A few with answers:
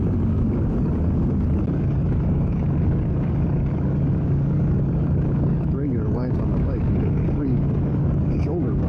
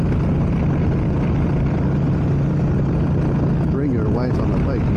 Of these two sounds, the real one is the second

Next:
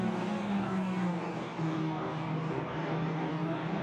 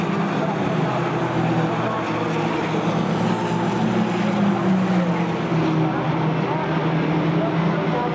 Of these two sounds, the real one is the second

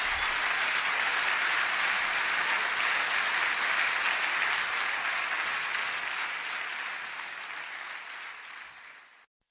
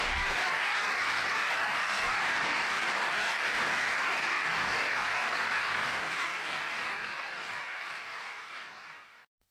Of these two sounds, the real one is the first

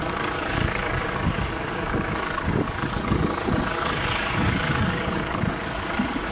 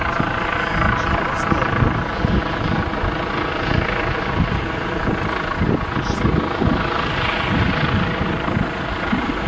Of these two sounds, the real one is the second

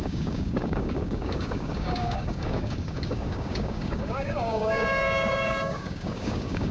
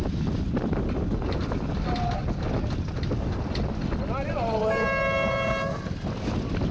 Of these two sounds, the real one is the second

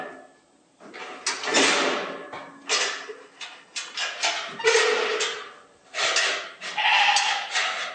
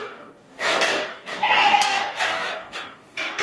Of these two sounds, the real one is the first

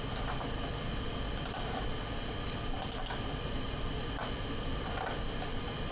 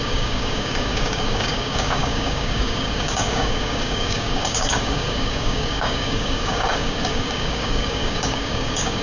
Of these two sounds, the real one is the first